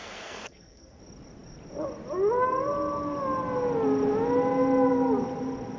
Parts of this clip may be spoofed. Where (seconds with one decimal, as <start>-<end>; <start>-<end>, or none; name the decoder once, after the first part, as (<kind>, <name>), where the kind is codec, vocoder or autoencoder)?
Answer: 0.0-1.0 (codec, SNAC)